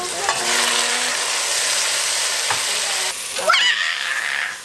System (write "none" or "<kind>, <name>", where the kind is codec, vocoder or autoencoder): none